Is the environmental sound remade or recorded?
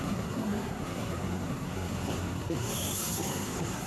remade